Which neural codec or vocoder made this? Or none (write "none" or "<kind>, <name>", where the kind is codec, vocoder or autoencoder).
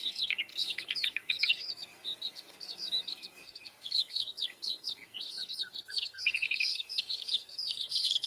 codec, SNAC